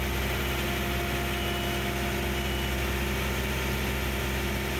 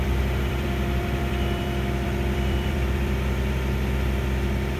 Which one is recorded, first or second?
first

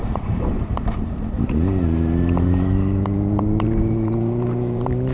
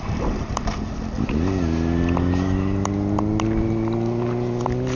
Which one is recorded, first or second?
second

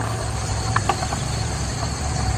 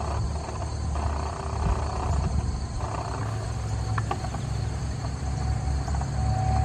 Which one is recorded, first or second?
second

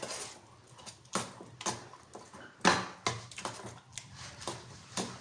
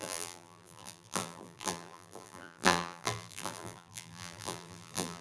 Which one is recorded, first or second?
first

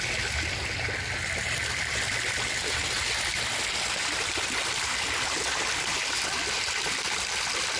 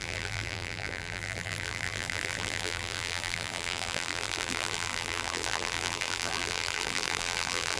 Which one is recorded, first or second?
first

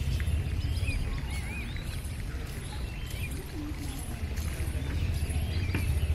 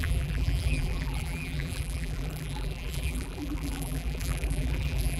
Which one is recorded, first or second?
first